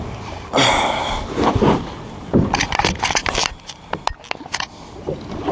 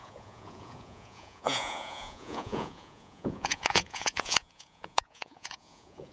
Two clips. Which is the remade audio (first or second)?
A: second